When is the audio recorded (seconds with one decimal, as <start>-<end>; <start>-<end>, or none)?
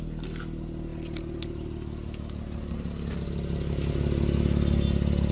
0.0-5.3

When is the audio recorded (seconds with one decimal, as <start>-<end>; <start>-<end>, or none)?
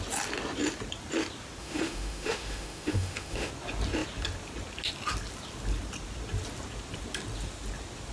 0.0-1.6; 3.5-8.1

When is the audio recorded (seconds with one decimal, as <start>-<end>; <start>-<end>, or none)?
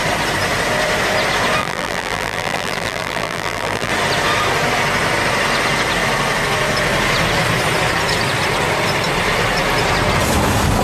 0.0-1.6; 3.9-10.8